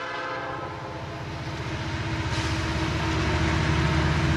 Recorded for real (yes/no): yes